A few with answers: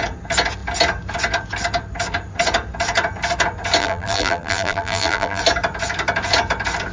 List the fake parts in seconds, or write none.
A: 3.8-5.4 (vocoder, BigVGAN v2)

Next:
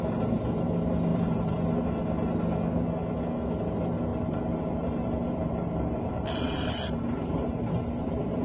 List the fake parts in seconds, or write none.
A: 1.1-1.7 (vocoder, BigVGAN v2); 4.1-8.4

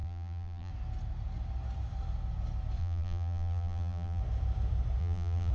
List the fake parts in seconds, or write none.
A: 0.0-0.7 (vocoder, BigVGAN v2); 2.8-4.2; 5.0-5.5